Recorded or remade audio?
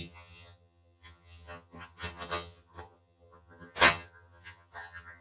remade